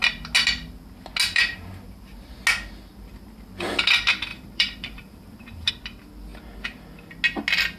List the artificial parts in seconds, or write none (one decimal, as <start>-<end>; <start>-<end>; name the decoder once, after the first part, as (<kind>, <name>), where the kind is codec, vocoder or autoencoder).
1.2-2.3 (vocoder, BigVGAN v2); 4.3-5.7